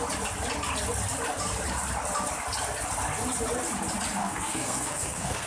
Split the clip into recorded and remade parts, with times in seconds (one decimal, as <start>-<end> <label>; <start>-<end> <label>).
0.0-4.2 recorded; 4.2-5.5 remade